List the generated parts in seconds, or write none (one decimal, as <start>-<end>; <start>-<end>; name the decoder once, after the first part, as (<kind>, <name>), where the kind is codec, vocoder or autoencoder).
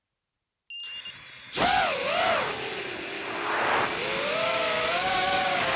4.0-5.8 (codec, DAC)